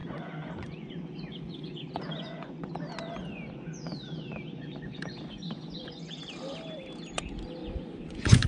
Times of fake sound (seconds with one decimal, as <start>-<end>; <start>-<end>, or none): 0.0-2.7; 3.2-6.2; 7.6-8.5